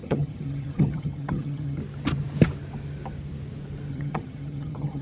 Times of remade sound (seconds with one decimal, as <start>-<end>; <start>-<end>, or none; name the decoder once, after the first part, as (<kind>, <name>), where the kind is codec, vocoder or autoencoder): 0.0-1.8 (vocoder, HiFi-GAN); 3.9-5.0